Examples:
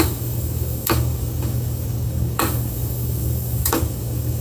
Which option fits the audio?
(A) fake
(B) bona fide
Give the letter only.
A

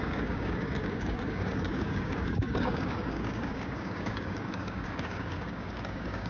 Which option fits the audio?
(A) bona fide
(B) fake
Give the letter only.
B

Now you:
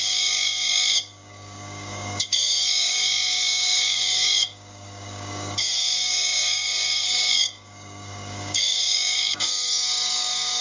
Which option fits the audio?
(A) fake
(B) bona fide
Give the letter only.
A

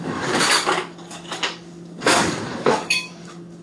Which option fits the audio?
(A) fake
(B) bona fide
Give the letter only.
A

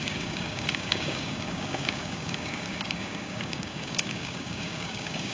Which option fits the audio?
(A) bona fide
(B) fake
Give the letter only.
B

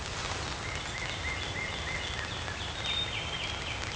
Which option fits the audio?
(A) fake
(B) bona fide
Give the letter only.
B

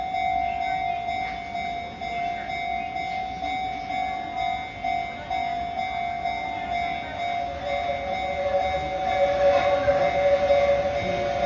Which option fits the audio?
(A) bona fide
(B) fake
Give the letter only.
A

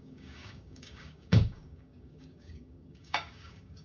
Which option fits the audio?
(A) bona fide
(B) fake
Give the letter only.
B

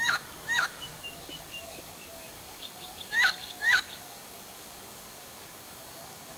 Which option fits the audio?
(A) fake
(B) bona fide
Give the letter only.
A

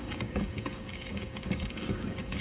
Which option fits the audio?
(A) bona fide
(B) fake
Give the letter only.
B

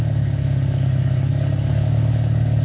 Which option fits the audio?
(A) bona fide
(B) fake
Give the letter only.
B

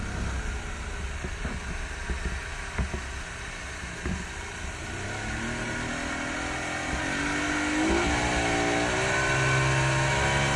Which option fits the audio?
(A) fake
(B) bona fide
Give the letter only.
B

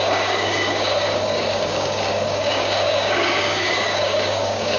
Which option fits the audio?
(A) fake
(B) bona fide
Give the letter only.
A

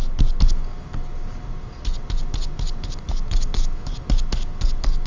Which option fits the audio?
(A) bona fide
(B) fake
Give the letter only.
A